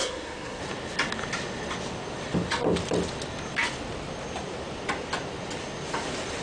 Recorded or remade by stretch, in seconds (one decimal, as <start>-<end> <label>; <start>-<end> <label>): 0.0-0.6 remade; 0.6-6.4 recorded